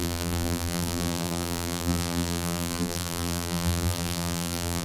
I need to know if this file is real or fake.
fake